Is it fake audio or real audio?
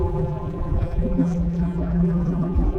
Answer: fake